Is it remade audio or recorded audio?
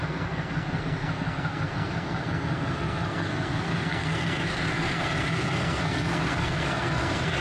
remade